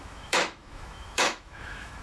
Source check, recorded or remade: remade